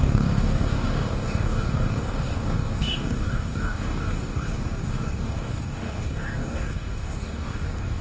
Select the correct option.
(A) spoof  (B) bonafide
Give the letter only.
A